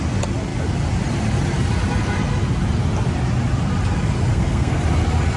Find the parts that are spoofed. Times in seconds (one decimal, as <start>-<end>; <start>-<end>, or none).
4.3-4.8

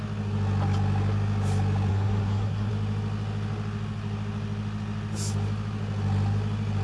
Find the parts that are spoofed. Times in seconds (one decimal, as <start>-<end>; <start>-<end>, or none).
1.9-2.7

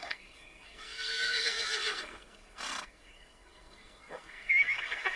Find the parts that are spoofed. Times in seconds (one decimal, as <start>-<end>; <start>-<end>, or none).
0.0-5.2

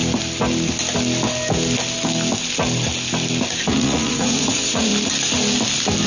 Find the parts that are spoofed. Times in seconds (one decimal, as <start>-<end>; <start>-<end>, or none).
3.7-4.9